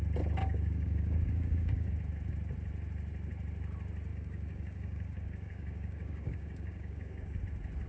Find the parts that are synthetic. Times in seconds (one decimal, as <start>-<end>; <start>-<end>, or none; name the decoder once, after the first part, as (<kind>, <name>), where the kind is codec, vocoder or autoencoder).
0.4-1.9 (codec, DAC); 4.1-7.4